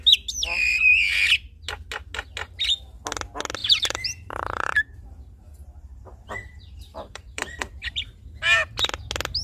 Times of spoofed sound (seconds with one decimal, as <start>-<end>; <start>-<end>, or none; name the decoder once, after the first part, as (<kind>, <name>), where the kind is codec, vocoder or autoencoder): 3.6-7.6 (vocoder, BigVGAN v2)